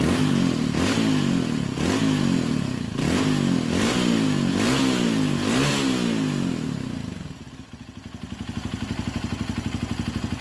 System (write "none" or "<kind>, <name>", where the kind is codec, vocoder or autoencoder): none